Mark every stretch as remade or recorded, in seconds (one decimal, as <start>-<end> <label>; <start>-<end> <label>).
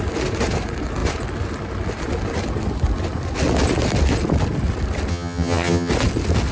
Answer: 0.0-5.1 recorded; 5.1-5.9 remade; 5.9-6.5 recorded